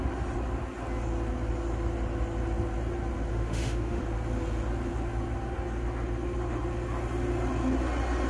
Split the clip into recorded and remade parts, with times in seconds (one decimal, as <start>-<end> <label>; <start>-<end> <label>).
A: 0.0-3.3 recorded; 3.3-4.0 remade; 4.0-8.3 recorded

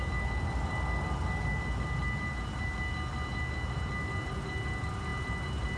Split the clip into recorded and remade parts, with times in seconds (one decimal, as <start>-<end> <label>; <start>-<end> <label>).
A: 0.0-5.8 recorded

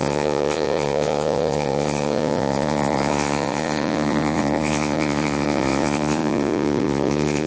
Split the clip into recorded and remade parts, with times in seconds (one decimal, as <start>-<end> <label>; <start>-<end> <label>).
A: 0.0-7.5 remade

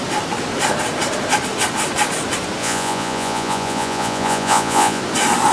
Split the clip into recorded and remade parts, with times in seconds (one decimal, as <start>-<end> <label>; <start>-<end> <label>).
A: 0.0-2.6 recorded; 2.6-5.0 remade; 5.0-5.5 recorded

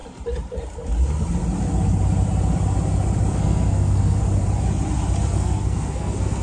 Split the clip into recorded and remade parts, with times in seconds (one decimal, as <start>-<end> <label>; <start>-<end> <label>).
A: 0.0-3.3 recorded; 3.3-4.2 remade; 4.2-5.3 recorded; 5.3-6.4 remade

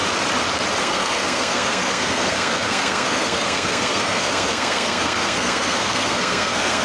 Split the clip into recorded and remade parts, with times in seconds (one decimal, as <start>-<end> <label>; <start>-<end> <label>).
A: 0.0-0.8 recorded; 0.8-6.8 remade

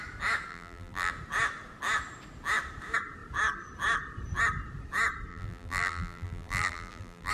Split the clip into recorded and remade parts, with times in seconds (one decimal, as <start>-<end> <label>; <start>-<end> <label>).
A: 0.0-0.5 recorded; 0.5-1.1 remade; 1.1-5.3 recorded; 5.3-7.3 remade